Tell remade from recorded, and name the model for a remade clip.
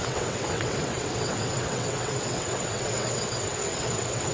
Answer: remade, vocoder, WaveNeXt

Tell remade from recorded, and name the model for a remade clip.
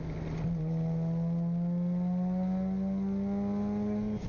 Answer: recorded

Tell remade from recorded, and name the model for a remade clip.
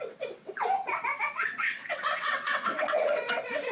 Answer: remade, vocoder, WaveNeXt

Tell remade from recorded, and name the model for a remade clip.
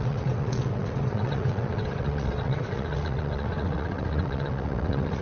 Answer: remade, vocoder, WaveNeXt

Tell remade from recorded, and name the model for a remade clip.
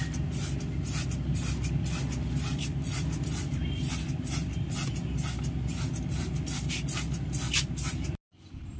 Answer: recorded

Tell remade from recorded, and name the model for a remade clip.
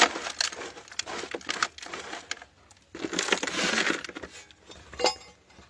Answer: recorded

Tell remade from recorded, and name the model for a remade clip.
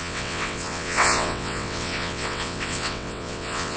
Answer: remade, vocoder, WaveNeXt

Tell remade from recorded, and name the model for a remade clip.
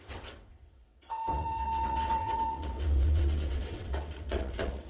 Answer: remade, vocoder, WaveNeXt